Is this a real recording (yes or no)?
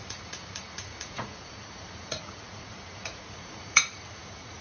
no